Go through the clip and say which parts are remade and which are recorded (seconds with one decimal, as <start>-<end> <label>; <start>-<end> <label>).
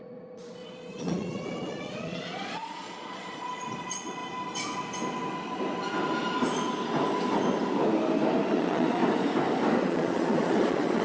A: 0.0-4.2 remade; 4.2-8.5 recorded; 8.5-9.0 remade; 9.0-9.8 recorded; 9.8-11.0 remade